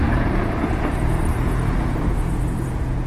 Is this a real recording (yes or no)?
no